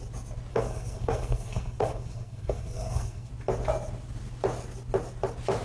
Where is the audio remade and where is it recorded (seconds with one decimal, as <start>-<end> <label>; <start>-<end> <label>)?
0.0-0.5 recorded; 0.5-3.3 remade; 3.3-5.6 recorded